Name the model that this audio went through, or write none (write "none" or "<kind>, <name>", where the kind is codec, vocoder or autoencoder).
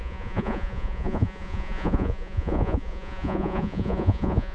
vocoder, Vocos